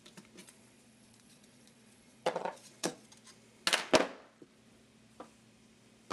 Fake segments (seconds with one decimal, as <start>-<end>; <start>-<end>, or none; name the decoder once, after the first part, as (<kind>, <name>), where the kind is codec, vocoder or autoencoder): 0.4-3.1 (vocoder, Vocos)